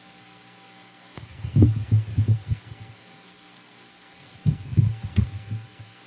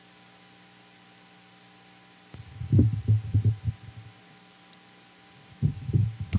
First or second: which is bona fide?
second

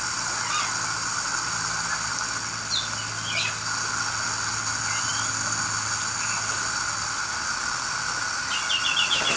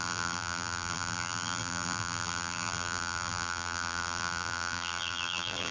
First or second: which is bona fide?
first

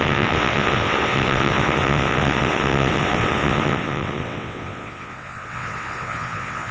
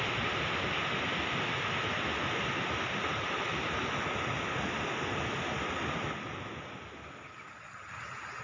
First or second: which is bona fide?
second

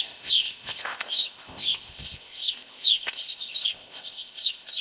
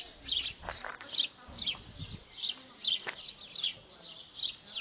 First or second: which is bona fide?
second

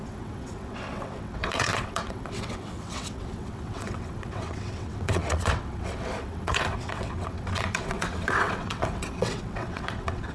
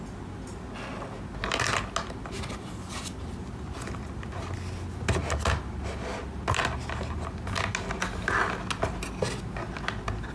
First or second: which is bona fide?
second